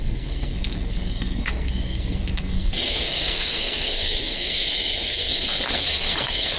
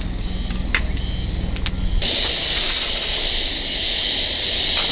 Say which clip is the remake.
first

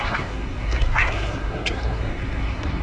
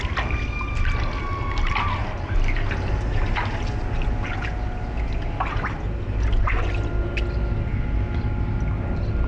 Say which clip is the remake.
first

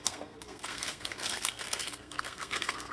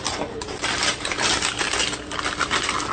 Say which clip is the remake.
first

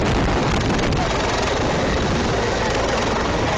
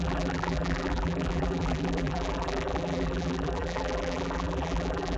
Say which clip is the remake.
second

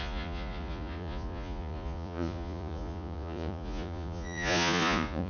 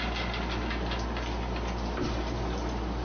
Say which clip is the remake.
first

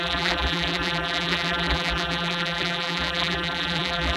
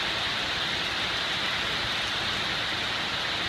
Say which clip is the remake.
first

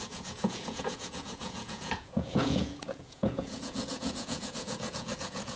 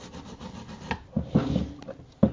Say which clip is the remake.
first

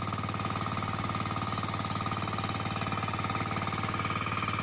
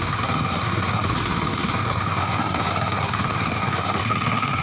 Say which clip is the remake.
second